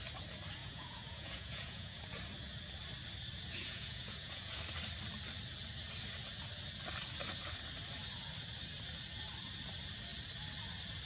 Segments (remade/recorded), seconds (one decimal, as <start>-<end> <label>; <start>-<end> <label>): 0.0-0.6 recorded; 0.6-2.0 remade; 2.0-3.6 recorded; 3.6-4.6 remade; 4.6-11.1 recorded